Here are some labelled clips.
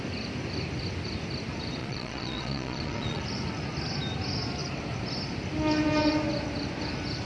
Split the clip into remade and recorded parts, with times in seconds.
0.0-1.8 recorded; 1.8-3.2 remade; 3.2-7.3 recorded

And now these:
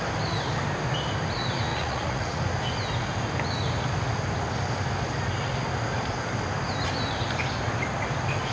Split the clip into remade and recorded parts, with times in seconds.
0.0-1.7 recorded; 1.7-2.4 remade; 2.4-8.5 recorded

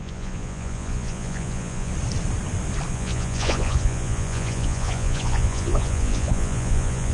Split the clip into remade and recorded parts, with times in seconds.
0.0-1.9 remade; 1.9-2.9 recorded; 2.9-7.1 remade

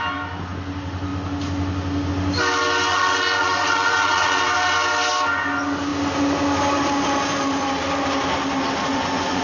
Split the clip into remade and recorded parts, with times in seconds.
0.0-2.9 recorded; 2.9-4.4 remade; 4.4-8.9 recorded; 8.9-9.4 remade

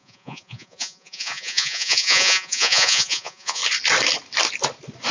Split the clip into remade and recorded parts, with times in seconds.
0.0-3.6 remade; 3.6-5.1 recorded

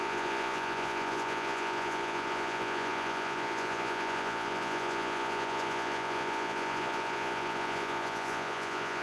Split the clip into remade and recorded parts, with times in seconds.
0.0-9.0 remade

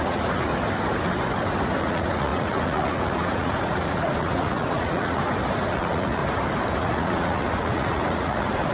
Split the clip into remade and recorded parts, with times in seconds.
0.0-0.5 remade; 0.5-1.8 recorded; 1.8-5.2 remade; 5.2-5.7 recorded; 5.7-6.2 remade; 6.2-6.8 recorded; 6.8-8.7 remade

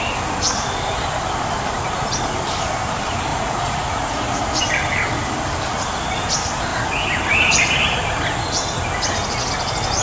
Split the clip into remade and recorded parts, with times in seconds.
0.0-3.3 recorded; 3.3-4.6 remade; 4.6-10.0 recorded